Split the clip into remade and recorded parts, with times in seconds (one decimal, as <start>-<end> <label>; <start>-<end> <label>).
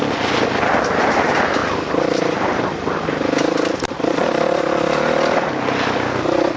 0.0-1.6 recorded; 1.6-5.6 remade; 5.6-6.6 recorded